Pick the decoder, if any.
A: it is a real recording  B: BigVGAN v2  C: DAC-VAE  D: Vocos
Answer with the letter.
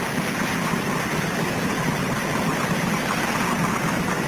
A